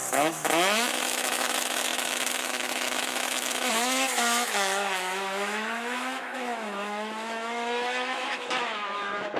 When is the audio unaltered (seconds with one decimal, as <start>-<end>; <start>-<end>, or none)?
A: none